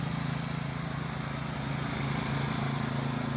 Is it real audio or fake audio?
real